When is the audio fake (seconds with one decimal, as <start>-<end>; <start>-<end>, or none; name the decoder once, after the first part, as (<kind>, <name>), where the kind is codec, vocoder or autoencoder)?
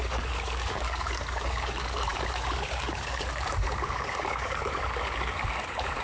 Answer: 0.0-6.0 (codec, DAC)